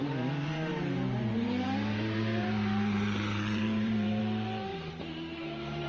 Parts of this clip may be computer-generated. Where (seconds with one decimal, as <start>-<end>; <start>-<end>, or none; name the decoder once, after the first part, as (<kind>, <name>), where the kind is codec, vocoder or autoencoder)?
0.7-4.2 (vocoder, BigVGAN v2); 4.7-5.9